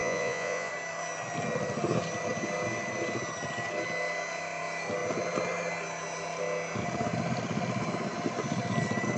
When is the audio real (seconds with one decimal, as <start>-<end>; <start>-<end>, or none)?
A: 0.7-9.2